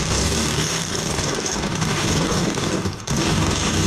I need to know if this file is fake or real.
fake